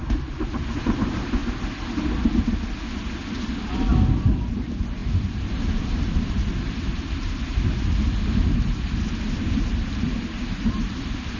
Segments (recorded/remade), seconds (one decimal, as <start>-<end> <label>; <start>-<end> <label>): 0.0-1.4 remade; 1.4-4.4 recorded; 4.4-7.5 remade; 7.5-8.4 recorded; 8.4-11.4 remade